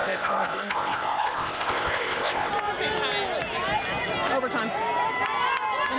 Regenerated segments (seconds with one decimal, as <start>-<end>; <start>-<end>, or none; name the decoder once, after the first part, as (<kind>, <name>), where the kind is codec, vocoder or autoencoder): 0.0-2.5 (codec, ZipCodec)